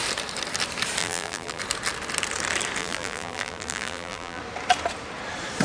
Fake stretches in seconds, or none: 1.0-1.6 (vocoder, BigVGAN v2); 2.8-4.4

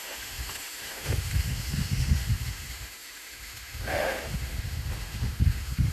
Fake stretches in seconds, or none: 0.0-5.9 (autoencoder, DAC-VAE)

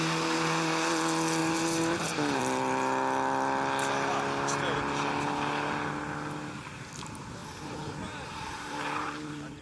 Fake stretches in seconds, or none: 1.4-2.4 (vocoder, BigVGAN v2); 7.4-9.6

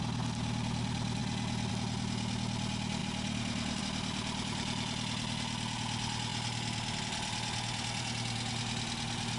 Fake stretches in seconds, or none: none

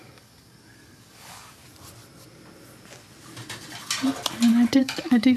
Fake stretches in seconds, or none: 0.0-1.6 (codec, DAC); 4.8-5.4